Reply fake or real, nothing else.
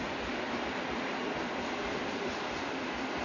real